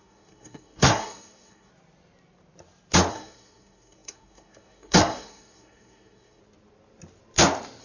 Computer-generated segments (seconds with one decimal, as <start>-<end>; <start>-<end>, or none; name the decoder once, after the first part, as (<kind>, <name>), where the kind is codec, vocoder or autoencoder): 0.0-1.7 (codec, SNAC); 3.1-6.4